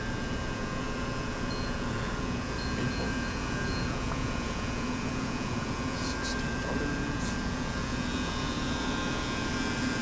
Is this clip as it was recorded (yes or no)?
no